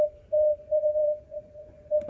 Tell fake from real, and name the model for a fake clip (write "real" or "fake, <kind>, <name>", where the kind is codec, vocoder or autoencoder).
fake, vocoder, Vocos